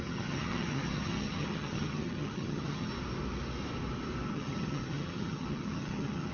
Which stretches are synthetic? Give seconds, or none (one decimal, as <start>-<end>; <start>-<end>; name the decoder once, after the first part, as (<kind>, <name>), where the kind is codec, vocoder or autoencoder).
0.0-2.9 (vocoder, HiFi-GAN); 4.3-6.3

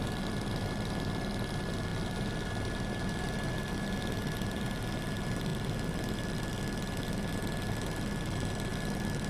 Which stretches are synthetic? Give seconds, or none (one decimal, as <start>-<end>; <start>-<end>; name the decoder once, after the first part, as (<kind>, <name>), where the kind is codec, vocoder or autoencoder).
1.9-4.8 (vocoder, BigVGAN v2)

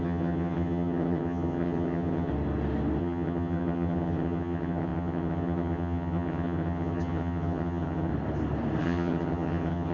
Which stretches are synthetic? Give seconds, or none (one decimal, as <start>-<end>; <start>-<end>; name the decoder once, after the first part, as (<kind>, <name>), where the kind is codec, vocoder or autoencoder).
0.0-2.3 (vocoder, HiFi-GAN); 3.0-8.1; 8.8-9.9

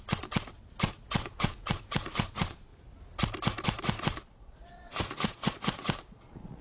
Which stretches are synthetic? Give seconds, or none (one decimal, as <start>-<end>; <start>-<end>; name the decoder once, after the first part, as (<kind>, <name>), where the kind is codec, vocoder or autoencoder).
0.0-2.7 (vocoder, Vocos); 4.0-6.6

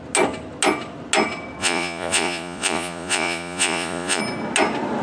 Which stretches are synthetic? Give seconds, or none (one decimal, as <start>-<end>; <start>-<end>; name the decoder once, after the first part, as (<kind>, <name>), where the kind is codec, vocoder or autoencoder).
1.6-4.2 (vocoder, Vocos)

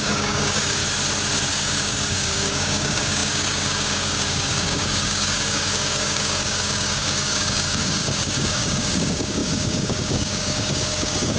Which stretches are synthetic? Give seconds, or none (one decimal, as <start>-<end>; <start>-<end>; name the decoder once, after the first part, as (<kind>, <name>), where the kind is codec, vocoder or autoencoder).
0.0-0.8 (codec, DAC); 1.5-11.4

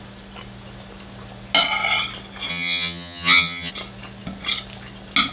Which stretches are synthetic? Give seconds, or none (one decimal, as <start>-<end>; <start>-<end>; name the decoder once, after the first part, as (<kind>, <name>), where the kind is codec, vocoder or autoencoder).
2.5-3.7 (vocoder, HiFi-GAN)

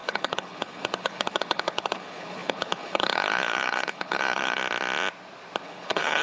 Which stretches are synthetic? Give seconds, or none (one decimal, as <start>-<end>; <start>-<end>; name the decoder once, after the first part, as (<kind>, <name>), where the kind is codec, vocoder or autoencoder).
0.0-4.6 (codec, HILCodec); 5.6-6.2